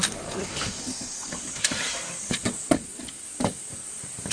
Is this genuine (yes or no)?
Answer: no